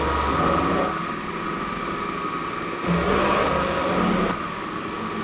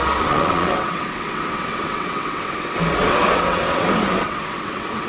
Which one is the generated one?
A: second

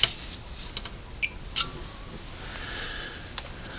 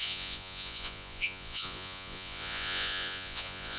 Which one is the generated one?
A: second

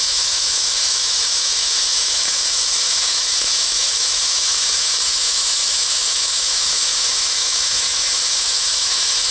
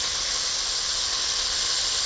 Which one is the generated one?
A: first